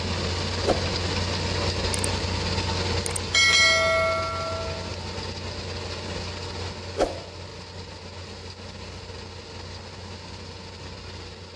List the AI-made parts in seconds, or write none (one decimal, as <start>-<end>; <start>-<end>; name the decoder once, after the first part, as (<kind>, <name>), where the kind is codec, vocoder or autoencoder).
none